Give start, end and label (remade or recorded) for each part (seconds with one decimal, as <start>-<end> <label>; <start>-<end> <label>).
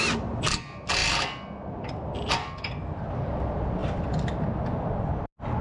0.0-5.6 recorded